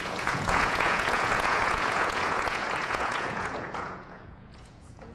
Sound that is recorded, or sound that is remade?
remade